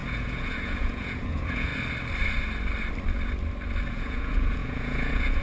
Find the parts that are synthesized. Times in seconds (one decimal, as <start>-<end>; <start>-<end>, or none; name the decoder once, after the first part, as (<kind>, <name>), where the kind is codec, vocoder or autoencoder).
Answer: 0.0-1.7 (vocoder, Vocos); 3.9-5.4

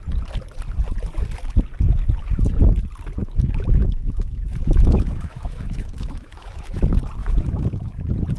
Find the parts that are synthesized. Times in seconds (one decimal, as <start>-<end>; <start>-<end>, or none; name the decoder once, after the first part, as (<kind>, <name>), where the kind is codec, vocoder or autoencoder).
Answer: 3.2-6.8 (autoencoder, DAC-VAE); 7.2-7.9

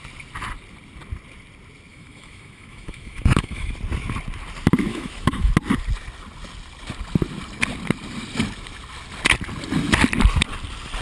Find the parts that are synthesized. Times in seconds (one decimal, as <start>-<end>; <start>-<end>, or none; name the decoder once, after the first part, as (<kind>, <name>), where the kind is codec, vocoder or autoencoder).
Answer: 1.9-3.7 (autoencoder, DAC-VAE); 4.9-5.5